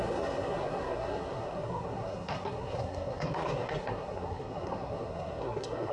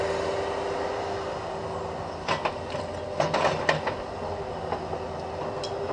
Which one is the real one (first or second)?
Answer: second